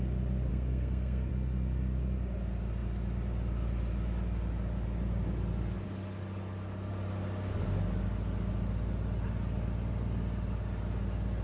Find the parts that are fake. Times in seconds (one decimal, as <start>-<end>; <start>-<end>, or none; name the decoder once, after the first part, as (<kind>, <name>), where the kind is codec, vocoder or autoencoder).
0.5-1.3 (codec, SNAC)